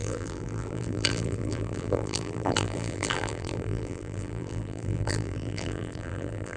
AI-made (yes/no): yes